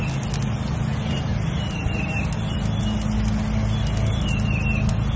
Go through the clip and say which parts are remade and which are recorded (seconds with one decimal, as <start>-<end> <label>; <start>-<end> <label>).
0.0-5.2 recorded